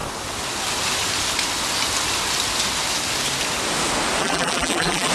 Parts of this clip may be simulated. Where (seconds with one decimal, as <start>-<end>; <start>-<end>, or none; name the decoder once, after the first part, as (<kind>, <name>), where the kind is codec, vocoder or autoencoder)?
4.2-5.1 (vocoder, BigVGAN v2)

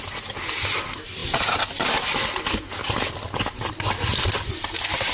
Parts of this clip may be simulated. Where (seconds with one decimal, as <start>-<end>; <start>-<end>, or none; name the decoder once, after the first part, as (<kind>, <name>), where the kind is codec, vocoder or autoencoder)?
none

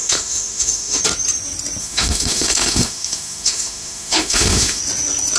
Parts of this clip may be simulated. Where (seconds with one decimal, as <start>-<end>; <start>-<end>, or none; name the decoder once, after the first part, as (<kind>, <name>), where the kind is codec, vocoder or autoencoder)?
0.0-1.0 (autoencoder, DAC-VAE); 1.8-4.8

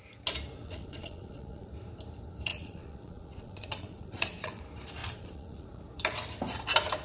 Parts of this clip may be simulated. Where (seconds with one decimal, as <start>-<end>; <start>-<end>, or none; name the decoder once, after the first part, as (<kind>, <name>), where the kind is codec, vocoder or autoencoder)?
0.6-1.7 (vocoder, Vocos); 2.5-4.6; 5.0-5.8

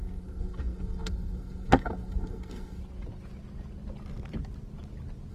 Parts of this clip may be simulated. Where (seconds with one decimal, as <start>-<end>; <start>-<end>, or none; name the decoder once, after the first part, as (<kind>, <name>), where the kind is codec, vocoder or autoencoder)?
0.0-2.8 (codec, SNAC)

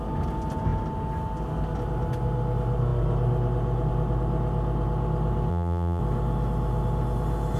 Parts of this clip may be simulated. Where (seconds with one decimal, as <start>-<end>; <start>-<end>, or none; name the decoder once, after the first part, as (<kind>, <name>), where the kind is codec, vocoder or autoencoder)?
5.5-6.0 (vocoder, BigVGAN v2)

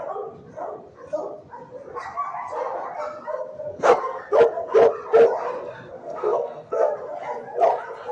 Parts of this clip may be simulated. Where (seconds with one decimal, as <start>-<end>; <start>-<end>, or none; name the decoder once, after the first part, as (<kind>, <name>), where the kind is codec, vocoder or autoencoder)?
3.7-4.2 (codec, SNAC); 6.0-6.9

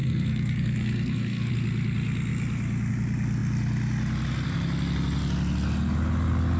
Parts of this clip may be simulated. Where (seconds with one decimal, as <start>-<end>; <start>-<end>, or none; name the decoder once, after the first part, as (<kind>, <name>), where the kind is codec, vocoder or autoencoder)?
0.0-1.5 (codec, SNAC)